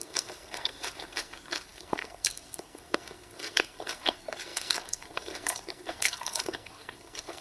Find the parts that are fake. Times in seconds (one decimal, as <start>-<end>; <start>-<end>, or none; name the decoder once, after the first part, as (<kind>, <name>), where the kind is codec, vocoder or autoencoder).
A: 0.0-7.4 (codec, SNAC)